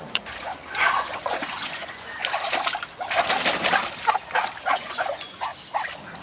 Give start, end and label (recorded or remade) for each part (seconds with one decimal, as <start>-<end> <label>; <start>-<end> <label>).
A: 0.0-2.2 remade; 2.2-4.6 recorded; 4.6-5.5 remade; 5.5-6.2 recorded